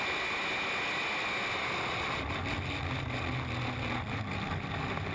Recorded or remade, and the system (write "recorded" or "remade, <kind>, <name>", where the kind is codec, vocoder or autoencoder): recorded